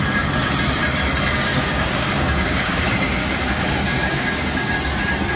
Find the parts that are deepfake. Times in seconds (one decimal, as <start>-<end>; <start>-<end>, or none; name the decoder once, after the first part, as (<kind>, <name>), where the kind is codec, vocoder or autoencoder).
1.5-4.7 (codec, DAC)